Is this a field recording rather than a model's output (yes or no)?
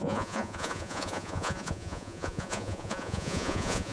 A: no